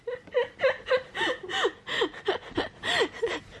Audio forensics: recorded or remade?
recorded